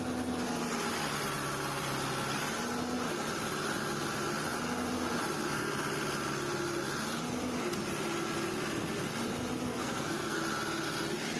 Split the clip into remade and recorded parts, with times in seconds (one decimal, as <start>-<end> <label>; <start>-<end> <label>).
0.0-9.7 recorded; 9.7-10.4 remade; 10.4-11.4 recorded